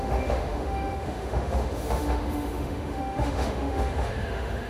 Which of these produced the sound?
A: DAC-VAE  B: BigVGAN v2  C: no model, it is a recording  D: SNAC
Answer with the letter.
A